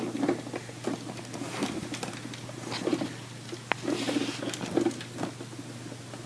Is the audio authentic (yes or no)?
yes